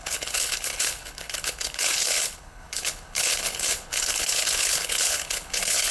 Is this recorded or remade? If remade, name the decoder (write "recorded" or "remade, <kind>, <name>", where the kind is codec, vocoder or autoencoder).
remade, codec, HILCodec